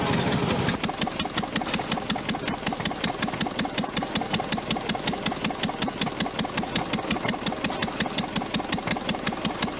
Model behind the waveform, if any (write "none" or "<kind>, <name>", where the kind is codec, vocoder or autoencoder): none